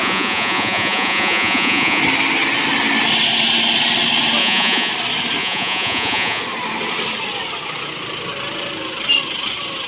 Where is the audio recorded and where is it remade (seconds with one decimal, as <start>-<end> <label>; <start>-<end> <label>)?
0.0-2.0 remade; 2.0-4.4 recorded; 4.4-4.9 remade; 4.9-5.4 recorded; 5.4-6.4 remade; 6.4-9.9 recorded